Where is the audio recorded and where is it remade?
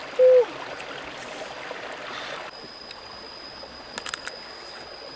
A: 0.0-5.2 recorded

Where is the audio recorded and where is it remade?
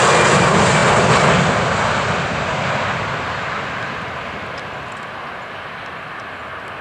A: 0.0-6.8 recorded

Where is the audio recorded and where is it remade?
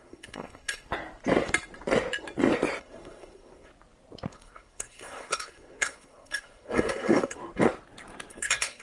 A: 0.0-0.9 remade; 0.9-2.8 recorded; 2.8-3.7 remade; 3.7-4.3 recorded; 4.3-7.4 remade; 7.4-8.3 recorded; 8.3-8.8 remade